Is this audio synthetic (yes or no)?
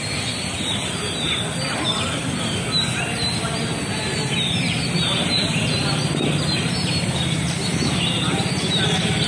no